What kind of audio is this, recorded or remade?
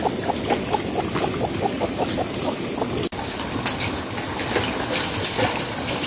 recorded